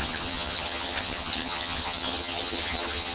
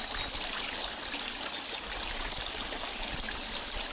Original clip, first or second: second